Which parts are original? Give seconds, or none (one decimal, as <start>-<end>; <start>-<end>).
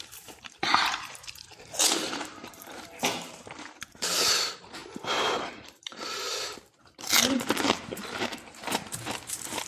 none